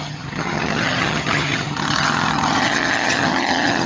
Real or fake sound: fake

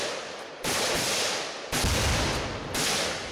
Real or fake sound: real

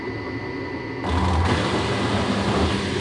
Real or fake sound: real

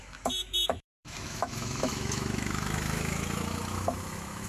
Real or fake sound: fake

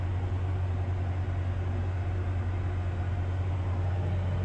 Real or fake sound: real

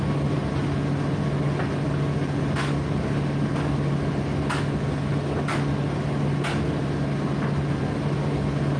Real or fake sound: real